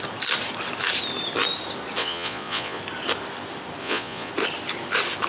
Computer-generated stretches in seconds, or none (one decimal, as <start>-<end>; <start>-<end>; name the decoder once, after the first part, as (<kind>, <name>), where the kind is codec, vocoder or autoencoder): 2.0-2.8 (vocoder, Vocos); 3.8-4.3